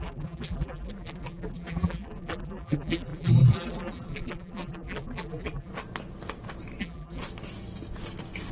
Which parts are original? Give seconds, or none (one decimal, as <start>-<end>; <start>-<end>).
5.7-6.8; 7.2-8.5